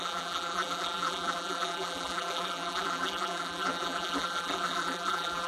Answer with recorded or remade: remade